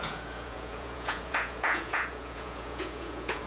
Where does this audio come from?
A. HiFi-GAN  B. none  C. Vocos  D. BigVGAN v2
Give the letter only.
C